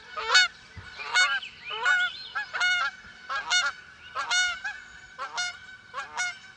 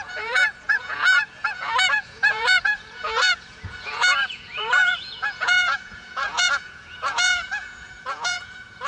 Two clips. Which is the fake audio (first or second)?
second